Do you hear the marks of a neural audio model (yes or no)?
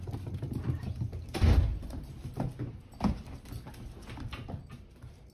no